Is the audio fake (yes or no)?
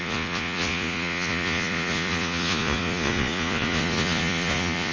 yes